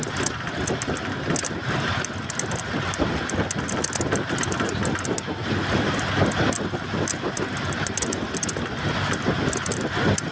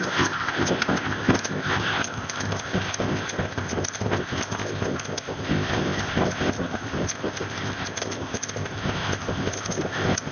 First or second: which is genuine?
first